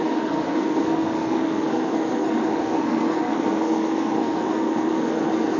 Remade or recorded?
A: remade